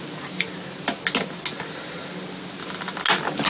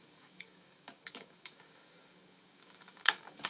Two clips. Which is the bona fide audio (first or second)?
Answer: first